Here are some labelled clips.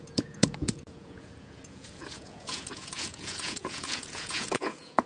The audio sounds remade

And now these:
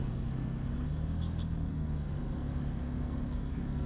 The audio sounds remade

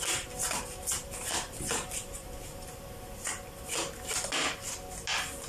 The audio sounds recorded